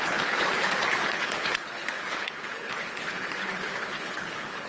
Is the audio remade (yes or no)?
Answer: yes